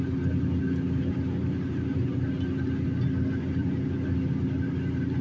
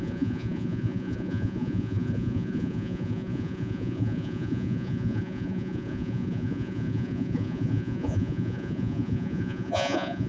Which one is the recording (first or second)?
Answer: first